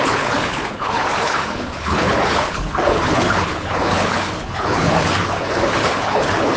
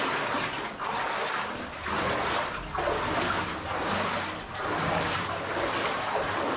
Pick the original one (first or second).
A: second